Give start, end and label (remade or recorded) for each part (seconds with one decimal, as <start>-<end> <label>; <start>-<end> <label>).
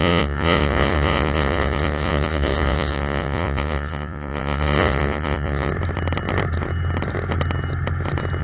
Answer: 0.0-5.7 remade; 5.7-8.4 recorded